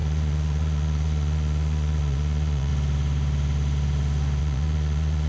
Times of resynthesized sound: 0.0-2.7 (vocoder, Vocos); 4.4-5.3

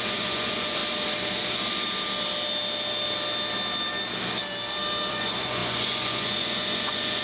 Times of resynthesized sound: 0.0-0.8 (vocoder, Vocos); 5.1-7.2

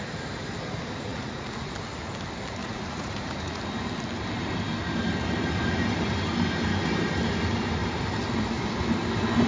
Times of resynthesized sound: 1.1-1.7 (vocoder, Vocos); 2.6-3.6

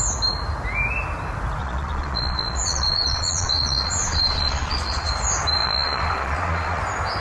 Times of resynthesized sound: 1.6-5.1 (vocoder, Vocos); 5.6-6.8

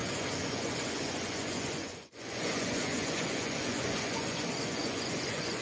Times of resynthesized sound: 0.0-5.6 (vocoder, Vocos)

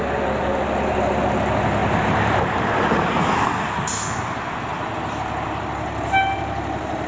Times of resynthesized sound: none